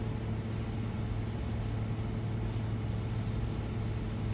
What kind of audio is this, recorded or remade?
recorded